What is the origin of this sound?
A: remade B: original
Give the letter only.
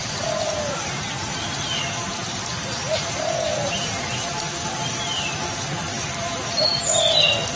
A